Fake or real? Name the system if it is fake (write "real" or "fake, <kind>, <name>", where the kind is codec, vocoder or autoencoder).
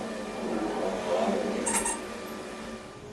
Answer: real